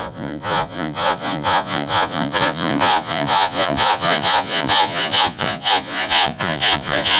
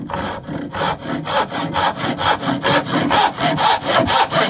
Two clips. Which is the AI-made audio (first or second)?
first